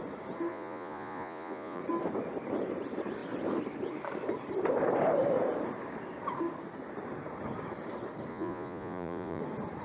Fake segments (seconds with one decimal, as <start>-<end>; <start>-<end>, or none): 0.5-1.8; 8.3-9.4